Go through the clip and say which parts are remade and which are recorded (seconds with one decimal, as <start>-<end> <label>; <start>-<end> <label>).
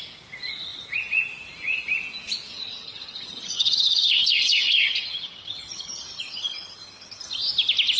0.0-2.5 recorded; 2.5-7.2 remade; 7.2-8.0 recorded